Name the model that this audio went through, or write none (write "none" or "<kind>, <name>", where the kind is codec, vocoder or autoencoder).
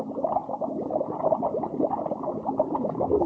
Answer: none